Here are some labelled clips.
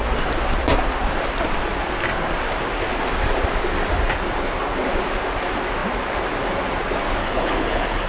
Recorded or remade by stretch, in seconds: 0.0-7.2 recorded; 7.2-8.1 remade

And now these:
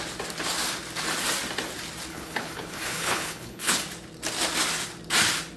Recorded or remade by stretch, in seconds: 0.0-2.1 recorded; 2.1-3.8 remade; 3.8-5.6 recorded

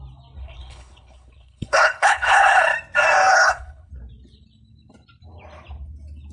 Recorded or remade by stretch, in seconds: 0.0-0.4 recorded; 0.4-2.6 remade; 2.6-3.3 recorded; 3.3-3.9 remade; 3.9-6.3 recorded

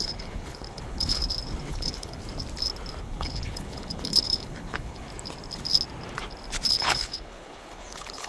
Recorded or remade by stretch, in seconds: 0.0-1.2 remade; 1.2-1.7 recorded; 1.7-2.2 remade; 2.2-3.0 recorded; 3.0-5.1 remade; 5.1-6.7 recorded; 6.7-8.3 remade